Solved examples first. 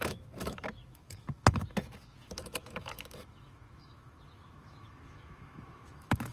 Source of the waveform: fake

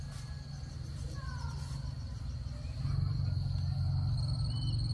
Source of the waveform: real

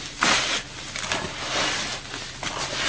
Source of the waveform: real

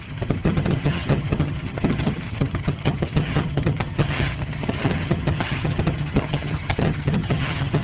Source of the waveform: fake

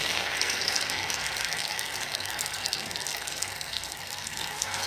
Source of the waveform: fake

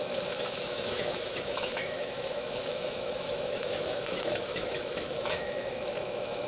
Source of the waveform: fake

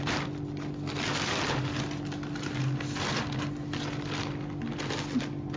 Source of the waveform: real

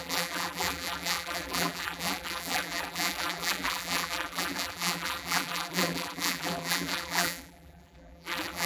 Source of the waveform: fake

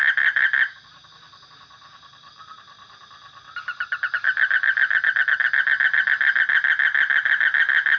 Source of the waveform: real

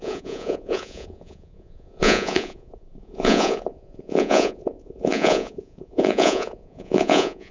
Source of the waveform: fake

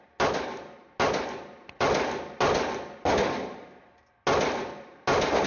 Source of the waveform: real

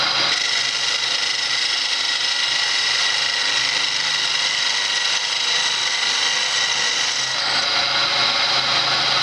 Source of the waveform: real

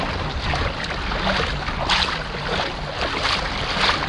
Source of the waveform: real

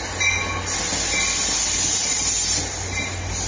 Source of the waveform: real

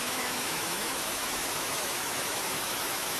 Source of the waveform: fake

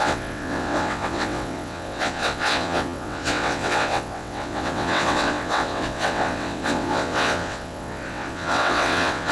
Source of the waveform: fake